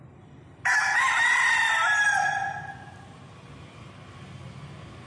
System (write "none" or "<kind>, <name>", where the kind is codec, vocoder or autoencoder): none